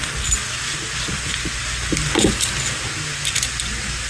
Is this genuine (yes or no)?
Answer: yes